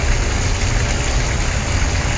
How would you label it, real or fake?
real